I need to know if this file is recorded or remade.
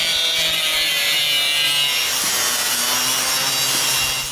recorded